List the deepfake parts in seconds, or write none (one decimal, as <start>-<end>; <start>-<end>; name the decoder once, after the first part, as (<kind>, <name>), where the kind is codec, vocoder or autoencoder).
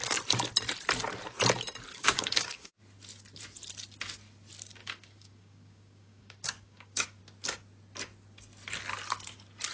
1.9-2.8 (codec, DAC); 4.8-7.2